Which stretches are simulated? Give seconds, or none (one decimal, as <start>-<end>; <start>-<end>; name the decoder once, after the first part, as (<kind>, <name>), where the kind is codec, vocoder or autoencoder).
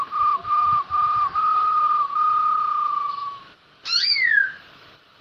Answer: 2.1-5.2 (autoencoder, DAC-VAE)